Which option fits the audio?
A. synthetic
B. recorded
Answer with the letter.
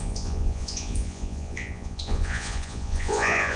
A